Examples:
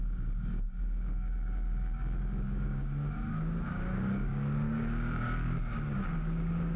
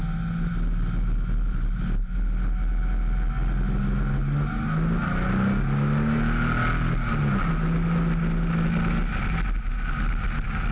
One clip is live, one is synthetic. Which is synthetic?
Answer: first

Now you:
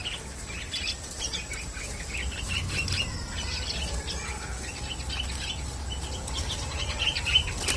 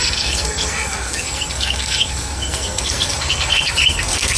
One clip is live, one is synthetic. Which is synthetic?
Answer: second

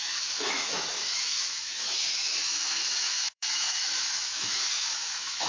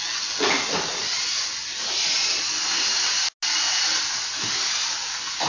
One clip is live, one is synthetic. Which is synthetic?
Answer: first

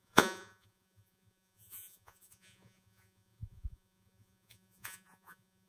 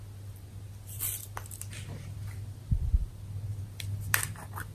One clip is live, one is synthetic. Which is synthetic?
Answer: first